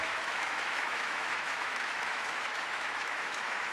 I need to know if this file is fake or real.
fake